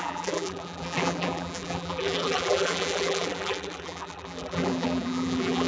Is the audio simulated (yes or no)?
yes